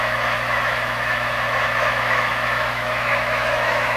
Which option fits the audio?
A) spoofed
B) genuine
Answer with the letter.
A